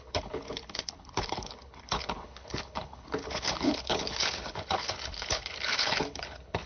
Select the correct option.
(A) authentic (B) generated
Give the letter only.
B